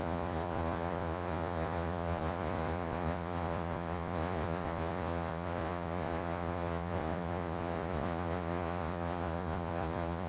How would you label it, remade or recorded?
remade